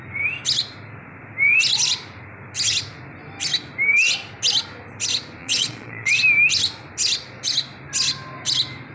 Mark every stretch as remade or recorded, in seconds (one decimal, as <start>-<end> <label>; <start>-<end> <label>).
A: 0.0-5.4 recorded; 5.4-6.1 remade; 6.1-8.9 recorded